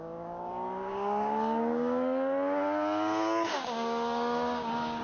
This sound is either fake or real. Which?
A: fake